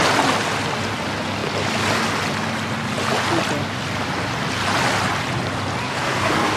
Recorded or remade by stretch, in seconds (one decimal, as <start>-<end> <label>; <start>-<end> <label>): 0.0-5.9 recorded; 5.9-6.6 remade